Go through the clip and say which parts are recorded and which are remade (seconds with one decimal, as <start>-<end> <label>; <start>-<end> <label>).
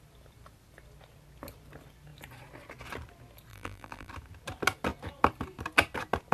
0.0-3.5 recorded; 3.5-4.1 remade; 4.1-6.3 recorded